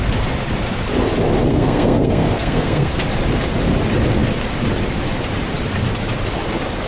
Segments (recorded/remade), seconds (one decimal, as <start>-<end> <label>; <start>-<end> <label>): 0.0-1.5 recorded; 1.5-2.9 remade; 2.9-6.9 recorded